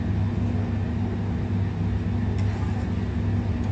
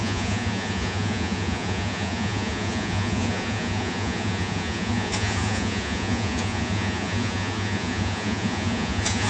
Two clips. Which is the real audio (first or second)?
first